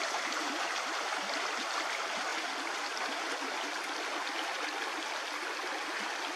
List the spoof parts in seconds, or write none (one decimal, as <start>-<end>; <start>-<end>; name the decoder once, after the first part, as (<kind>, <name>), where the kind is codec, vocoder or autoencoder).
0.0-2.3 (vocoder, BigVGAN v2)